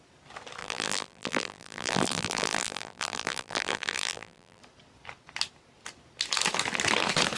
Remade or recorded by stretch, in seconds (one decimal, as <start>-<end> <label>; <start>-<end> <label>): 0.0-0.6 recorded; 0.6-4.6 remade; 4.6-7.4 recorded